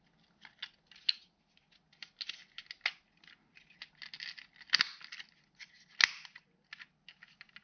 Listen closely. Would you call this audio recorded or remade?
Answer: recorded